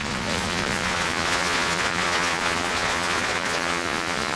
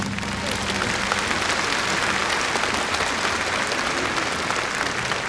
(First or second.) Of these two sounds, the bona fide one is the second